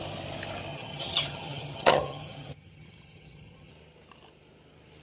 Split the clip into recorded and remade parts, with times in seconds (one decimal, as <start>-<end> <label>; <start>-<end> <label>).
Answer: 0.0-0.7 recorded; 0.7-3.7 remade; 3.7-5.0 recorded